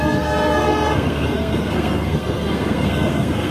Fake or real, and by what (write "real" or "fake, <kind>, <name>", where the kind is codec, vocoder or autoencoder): fake, codec, SNAC